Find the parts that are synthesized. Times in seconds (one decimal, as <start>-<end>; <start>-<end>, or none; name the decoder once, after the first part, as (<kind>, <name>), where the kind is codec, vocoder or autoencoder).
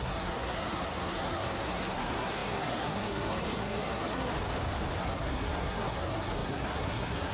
0.0-4.3 (codec, SNAC); 5.0-7.3